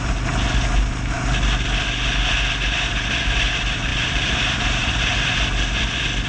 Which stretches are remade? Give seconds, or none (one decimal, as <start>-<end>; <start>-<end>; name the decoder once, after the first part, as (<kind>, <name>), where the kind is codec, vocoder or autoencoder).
3.9-5.3 (vocoder, BigVGAN v2)